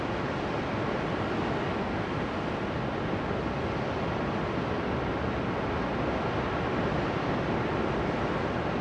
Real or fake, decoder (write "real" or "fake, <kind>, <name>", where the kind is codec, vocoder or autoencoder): real